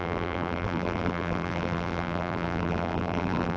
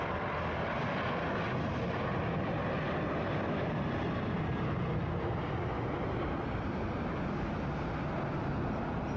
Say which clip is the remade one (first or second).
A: first